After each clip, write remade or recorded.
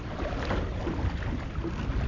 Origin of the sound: recorded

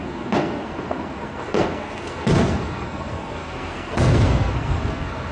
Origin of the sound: remade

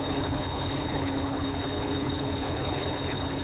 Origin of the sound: remade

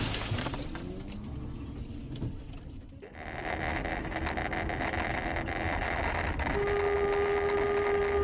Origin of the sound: recorded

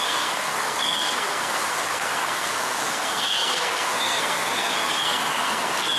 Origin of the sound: remade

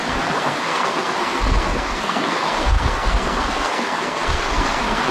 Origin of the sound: remade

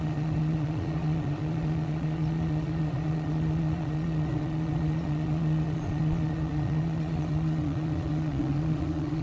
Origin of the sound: remade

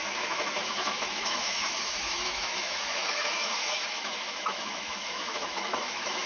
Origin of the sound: remade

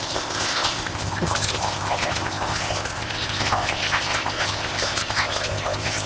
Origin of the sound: remade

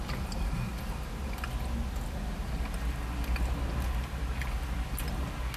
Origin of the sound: recorded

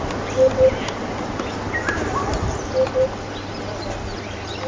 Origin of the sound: recorded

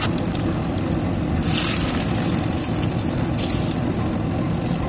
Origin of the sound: recorded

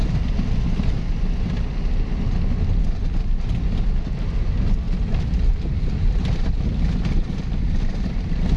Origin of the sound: recorded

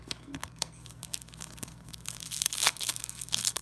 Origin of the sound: remade